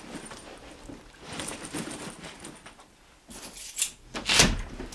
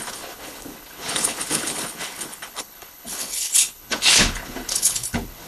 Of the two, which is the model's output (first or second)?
second